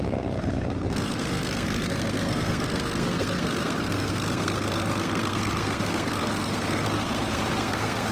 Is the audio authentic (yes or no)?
no